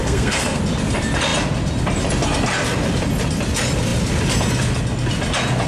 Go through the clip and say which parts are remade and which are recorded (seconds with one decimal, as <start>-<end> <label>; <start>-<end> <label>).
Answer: 0.0-0.6 remade; 0.6-5.7 recorded